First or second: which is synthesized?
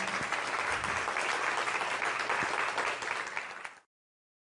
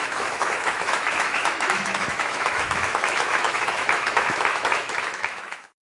second